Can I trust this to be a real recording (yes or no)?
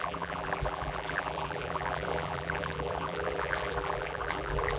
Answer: no